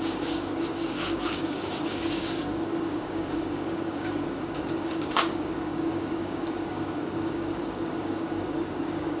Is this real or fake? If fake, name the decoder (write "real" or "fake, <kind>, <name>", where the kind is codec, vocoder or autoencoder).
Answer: fake, codec, DAC